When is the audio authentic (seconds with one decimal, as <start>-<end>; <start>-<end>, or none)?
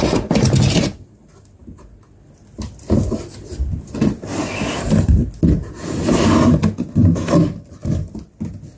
0.0-8.8